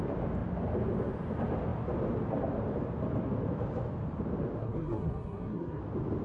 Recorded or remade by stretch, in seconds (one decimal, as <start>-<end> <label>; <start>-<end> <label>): 0.0-4.6 recorded; 4.6-5.8 remade; 5.8-6.2 recorded